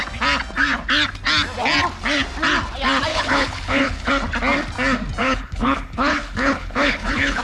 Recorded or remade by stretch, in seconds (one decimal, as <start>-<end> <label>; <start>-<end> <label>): 0.0-3.1 recorded; 3.1-4.1 remade; 4.1-5.2 recorded; 5.2-7.4 remade